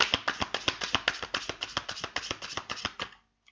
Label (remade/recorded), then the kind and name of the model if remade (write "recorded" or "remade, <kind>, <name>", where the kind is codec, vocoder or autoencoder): recorded